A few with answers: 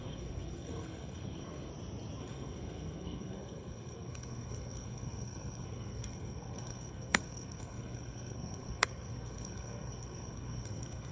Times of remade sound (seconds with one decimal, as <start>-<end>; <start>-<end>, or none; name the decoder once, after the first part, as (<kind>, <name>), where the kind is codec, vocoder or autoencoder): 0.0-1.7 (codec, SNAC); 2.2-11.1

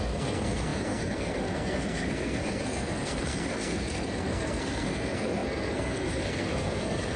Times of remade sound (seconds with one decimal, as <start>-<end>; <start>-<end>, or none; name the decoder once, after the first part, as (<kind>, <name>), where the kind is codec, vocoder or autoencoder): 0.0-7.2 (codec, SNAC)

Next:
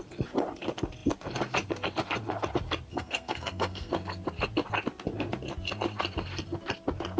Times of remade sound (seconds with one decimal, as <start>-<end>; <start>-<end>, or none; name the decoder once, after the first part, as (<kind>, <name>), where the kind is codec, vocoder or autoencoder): 2.9-3.9 (codec, SNAC)